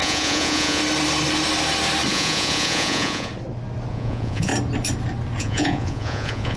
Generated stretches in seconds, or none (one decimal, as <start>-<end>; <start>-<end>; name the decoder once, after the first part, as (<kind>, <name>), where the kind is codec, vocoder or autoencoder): 0.0-0.8 (vocoder, Vocos); 2.1-3.3; 3.9-4.5; 5.4-6.6